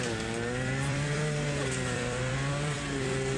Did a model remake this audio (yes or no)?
yes